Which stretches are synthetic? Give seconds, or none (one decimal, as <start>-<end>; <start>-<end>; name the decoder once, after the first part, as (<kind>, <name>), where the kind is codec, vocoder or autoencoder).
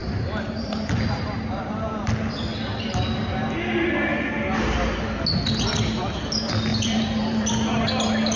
0.0-0.9 (vocoder, BigVGAN v2); 6.7-7.5